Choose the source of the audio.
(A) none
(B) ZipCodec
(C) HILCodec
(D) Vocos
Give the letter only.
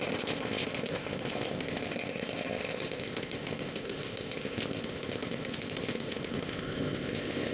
B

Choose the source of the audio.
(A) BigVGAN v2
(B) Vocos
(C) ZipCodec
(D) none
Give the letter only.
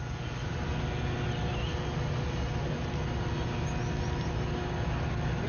D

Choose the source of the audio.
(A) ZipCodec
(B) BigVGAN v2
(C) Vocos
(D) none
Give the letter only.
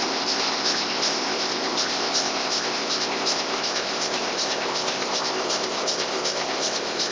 A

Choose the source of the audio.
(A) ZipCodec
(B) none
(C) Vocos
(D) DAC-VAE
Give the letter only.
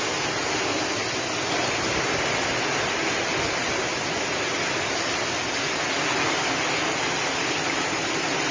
B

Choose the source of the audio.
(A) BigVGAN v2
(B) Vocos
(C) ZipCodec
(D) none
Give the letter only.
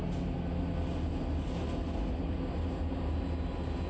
D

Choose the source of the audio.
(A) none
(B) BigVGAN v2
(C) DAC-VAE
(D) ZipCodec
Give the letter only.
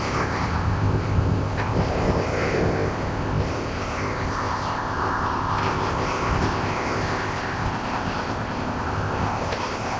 D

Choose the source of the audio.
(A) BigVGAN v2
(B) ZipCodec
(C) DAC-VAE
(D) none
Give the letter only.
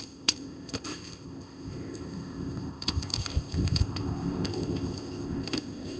B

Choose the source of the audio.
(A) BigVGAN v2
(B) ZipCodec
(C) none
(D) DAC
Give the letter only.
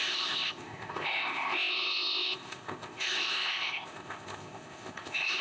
B